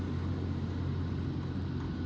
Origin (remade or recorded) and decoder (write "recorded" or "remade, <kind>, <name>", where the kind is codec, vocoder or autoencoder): recorded